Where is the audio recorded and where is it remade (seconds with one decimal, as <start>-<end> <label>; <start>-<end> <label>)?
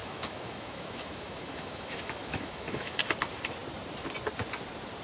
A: 0.0-3.0 remade; 3.0-5.0 recorded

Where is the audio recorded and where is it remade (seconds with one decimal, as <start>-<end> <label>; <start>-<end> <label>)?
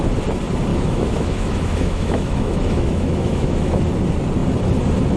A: 0.0-0.7 recorded; 0.7-3.8 remade; 3.8-5.2 recorded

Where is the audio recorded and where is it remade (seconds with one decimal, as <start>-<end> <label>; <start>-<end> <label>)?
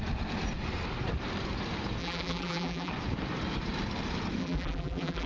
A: 0.0-2.0 recorded; 2.0-2.9 remade; 2.9-4.4 recorded; 4.4-5.3 remade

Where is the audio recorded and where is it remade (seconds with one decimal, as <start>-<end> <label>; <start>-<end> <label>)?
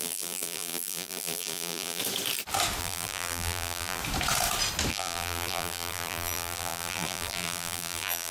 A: 0.0-2.0 remade; 2.0-2.8 recorded; 2.8-4.0 remade; 4.0-4.9 recorded; 4.9-8.3 remade